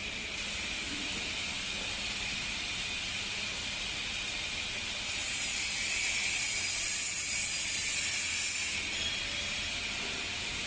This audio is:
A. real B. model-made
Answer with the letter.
A